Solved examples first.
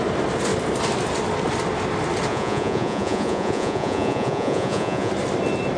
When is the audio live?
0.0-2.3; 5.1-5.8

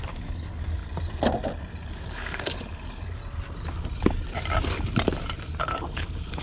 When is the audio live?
0.8-1.8; 3.2-5.6

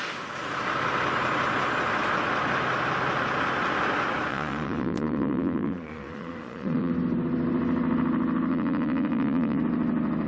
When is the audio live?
0.0-4.3; 6.9-8.5; 9.6-10.3

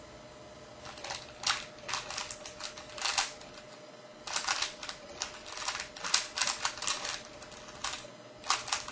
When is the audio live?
0.0-3.1; 3.6-8.9

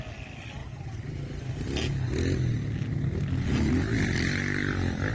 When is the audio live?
0.0-5.1